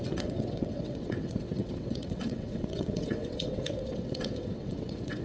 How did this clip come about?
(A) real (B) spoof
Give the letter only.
B